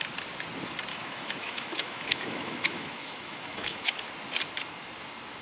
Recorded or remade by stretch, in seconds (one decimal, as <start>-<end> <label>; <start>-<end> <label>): 0.0-0.9 recorded; 0.9-4.1 remade; 4.1-5.4 recorded